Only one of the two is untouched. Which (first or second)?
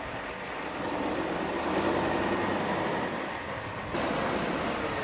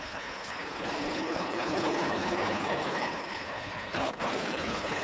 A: first